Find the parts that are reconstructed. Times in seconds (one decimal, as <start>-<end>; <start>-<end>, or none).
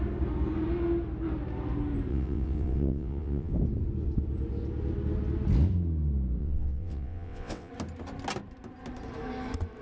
2.1-3.5; 6.4-7.7